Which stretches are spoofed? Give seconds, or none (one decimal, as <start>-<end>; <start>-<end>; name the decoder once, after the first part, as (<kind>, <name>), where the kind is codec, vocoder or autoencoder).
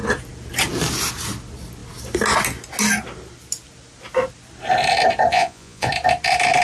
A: 5.3-5.9 (vocoder, Vocos)